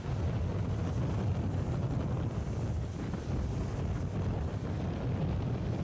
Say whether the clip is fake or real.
real